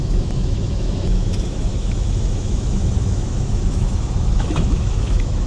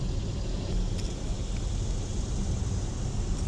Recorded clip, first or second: second